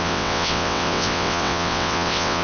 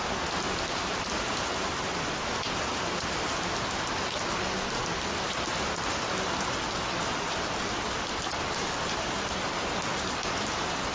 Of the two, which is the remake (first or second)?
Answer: first